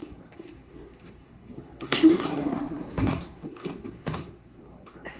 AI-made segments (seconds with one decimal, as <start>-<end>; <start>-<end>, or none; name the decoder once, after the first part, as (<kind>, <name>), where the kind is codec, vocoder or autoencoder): 0.0-5.2 (codec, SNAC)